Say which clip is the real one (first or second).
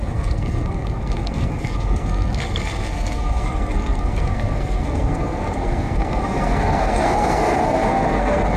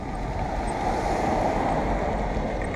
second